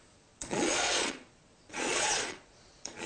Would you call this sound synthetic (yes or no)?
yes